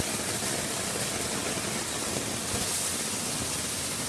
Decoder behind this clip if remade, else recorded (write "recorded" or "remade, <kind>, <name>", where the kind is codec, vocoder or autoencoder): recorded